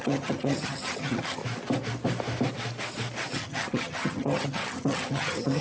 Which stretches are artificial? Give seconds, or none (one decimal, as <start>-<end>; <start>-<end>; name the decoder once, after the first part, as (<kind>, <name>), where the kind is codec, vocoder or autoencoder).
0.0-1.4 (vocoder, HiFi-GAN); 3.3-5.6